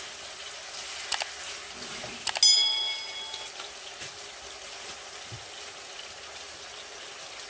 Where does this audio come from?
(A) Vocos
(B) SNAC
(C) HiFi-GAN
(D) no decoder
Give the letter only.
D